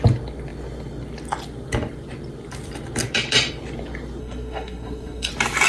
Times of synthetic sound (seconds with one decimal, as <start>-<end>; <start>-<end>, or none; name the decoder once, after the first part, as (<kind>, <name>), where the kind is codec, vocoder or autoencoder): 4.2-5.3 (codec, SNAC)